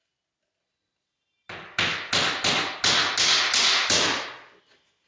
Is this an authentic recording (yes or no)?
yes